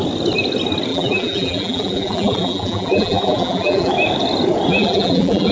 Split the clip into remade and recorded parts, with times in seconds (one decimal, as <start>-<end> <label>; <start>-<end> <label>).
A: 0.0-0.9 recorded; 0.9-3.9 remade; 3.9-4.7 recorded; 4.7-5.5 remade